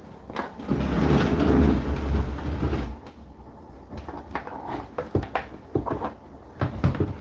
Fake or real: real